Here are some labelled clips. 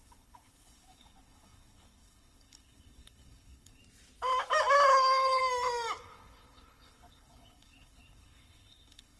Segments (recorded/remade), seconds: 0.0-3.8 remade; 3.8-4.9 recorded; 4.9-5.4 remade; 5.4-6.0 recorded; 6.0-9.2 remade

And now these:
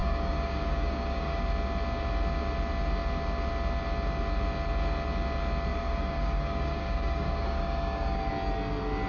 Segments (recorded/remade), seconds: 0.0-1.4 remade; 1.4-5.7 recorded; 5.7-8.3 remade; 8.3-9.1 recorded

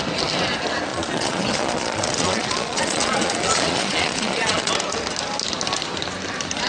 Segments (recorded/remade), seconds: 0.0-0.9 recorded; 0.9-4.7 remade; 4.7-6.7 recorded

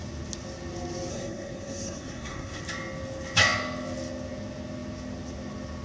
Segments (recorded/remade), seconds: 0.0-1.1 recorded; 1.1-2.6 remade; 2.6-5.8 recorded

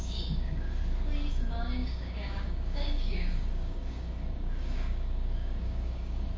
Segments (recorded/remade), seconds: 0.0-0.8 remade; 0.8-1.3 recorded; 1.3-6.4 remade

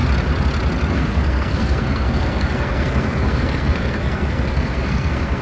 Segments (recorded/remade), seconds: 0.0-0.9 recorded; 0.9-5.4 remade